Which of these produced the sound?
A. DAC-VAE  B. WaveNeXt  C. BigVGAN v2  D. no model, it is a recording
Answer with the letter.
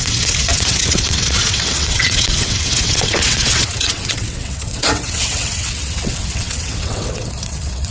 B